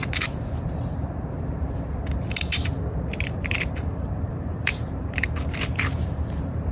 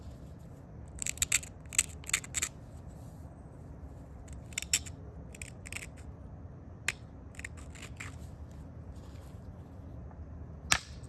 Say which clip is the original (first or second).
second